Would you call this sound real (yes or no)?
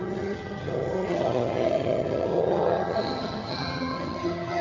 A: no